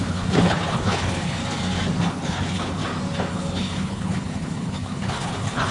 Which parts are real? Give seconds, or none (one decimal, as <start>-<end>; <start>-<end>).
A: 1.4-2.1; 2.8-3.3